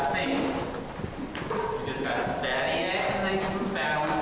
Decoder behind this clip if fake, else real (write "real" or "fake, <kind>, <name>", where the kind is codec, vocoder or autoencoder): real